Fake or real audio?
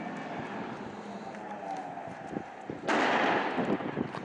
real